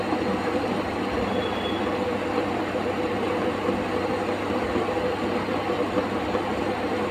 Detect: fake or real real